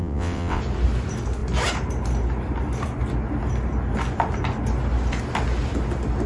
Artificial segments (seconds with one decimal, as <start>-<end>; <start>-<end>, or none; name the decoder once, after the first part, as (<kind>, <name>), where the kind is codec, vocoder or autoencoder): 0.0-0.6 (vocoder, WaveNeXt)